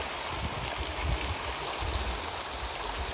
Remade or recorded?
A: recorded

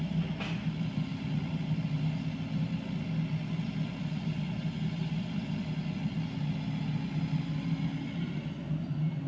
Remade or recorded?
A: recorded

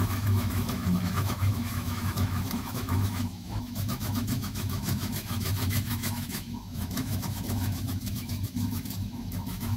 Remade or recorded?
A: remade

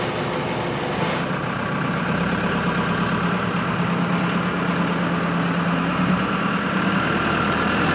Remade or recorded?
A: recorded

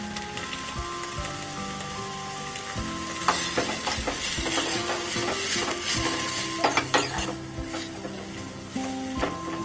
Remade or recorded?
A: recorded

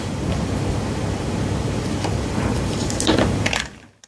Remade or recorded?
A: remade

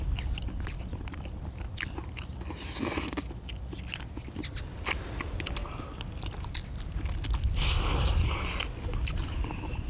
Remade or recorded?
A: recorded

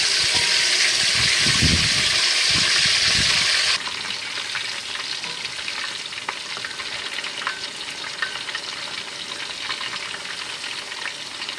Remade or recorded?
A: recorded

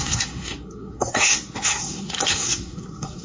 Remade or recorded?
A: remade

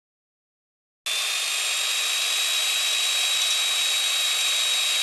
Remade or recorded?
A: recorded